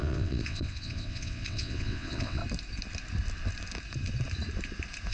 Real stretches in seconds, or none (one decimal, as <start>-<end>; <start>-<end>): 2.4-5.1